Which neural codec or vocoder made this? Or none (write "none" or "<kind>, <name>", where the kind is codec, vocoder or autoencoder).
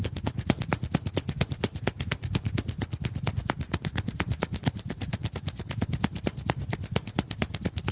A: none